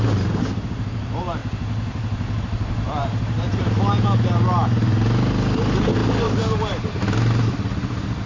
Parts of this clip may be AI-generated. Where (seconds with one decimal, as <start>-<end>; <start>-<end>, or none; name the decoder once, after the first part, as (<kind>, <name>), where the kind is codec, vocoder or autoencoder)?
3.0-3.7 (vocoder, BigVGAN v2); 6.0-6.9